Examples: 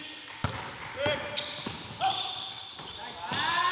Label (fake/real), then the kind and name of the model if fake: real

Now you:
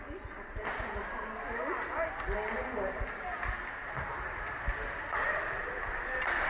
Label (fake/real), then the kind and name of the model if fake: real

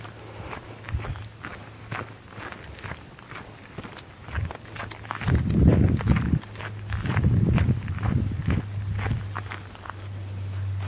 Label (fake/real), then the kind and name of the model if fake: real